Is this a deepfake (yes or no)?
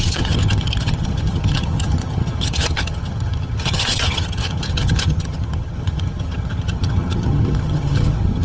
yes